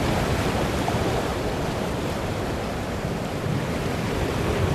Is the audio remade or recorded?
remade